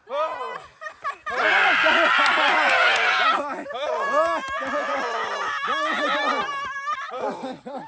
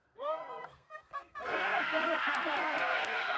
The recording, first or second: first